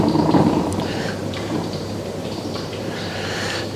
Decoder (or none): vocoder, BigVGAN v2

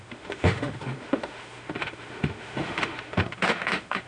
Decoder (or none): autoencoder, DAC-VAE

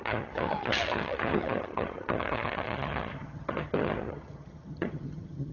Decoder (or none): vocoder, HiFi-GAN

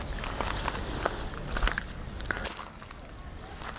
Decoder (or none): none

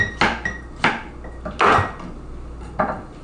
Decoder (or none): none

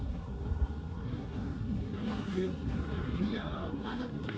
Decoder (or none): codec, SNAC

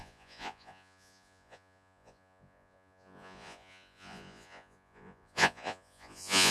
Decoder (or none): vocoder, Vocos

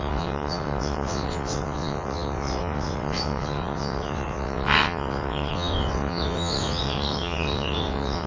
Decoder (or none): vocoder, WaveNeXt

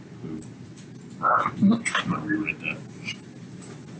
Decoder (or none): none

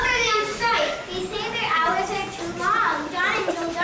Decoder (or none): none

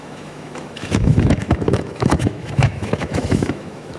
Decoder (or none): autoencoder, DAC-VAE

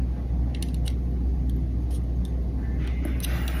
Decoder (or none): none